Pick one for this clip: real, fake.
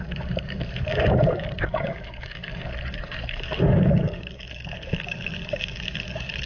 fake